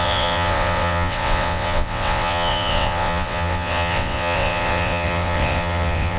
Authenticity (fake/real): fake